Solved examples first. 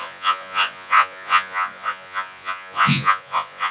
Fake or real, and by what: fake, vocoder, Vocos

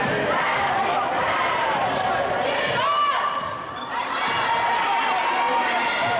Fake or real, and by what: real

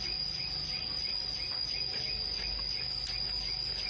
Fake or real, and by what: real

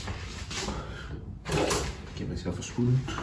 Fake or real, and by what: real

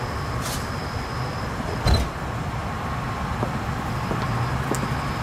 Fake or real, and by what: real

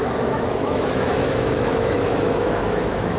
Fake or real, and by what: fake, autoencoder, DAC-VAE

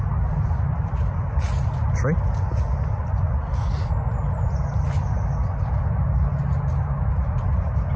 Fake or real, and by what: real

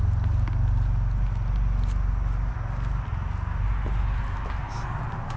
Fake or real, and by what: real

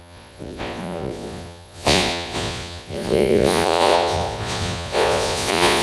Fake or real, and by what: fake, vocoder, Vocos